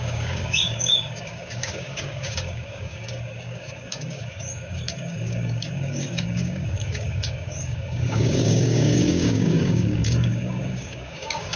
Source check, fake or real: fake